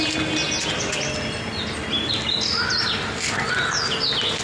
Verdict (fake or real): real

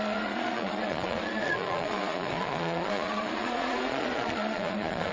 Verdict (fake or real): fake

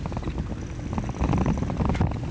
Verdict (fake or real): real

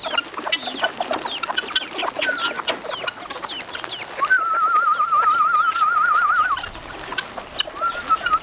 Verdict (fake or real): real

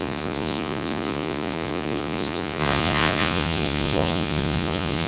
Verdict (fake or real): fake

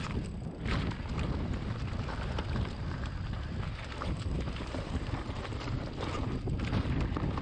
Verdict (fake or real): real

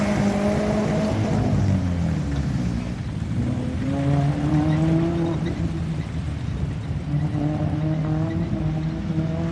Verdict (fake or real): real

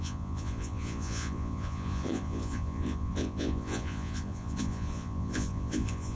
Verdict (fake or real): fake